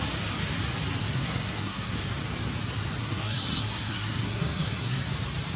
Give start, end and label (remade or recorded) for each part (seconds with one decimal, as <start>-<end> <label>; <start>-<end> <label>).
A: 0.0-1.0 recorded; 1.0-2.1 remade; 2.1-3.0 recorded; 3.0-5.1 remade; 5.1-5.6 recorded